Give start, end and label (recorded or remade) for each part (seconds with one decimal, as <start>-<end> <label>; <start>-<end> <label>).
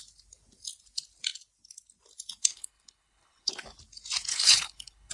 0.0-2.5 recorded; 2.5-3.5 remade; 3.5-4.3 recorded; 4.3-5.1 remade